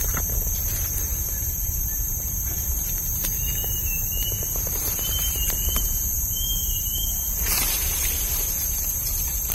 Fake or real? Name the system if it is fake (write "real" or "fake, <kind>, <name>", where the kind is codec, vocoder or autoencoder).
fake, vocoder, BigVGAN v2